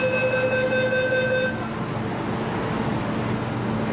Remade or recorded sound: recorded